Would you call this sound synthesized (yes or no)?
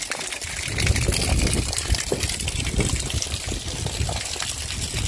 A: no